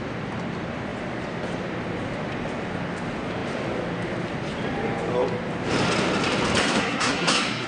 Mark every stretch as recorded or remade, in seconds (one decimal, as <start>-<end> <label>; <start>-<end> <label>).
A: 0.0-6.6 recorded; 6.6-7.7 remade